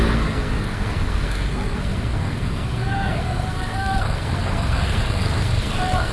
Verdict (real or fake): fake